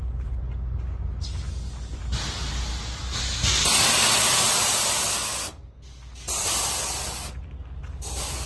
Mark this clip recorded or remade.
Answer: recorded